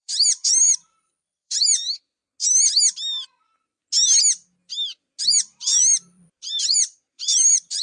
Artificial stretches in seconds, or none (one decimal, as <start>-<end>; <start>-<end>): 0.0-2.2; 5.2-7.8